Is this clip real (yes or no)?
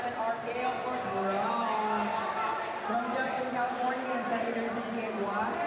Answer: yes